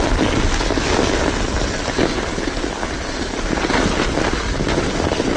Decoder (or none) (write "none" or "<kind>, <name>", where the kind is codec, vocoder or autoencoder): none